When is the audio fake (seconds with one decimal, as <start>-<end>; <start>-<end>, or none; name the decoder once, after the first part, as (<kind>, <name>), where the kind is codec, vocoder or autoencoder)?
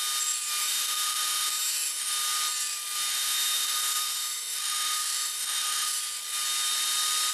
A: 0.6-2.1 (autoencoder, DAC-VAE); 3.1-6.0